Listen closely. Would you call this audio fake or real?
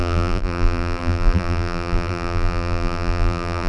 fake